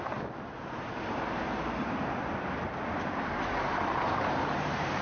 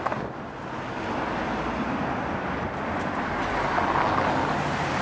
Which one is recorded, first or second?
second